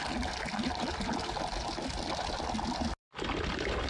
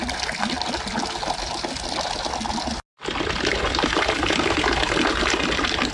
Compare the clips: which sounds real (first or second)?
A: second